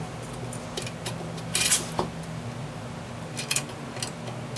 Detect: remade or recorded recorded